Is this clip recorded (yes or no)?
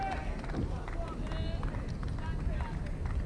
yes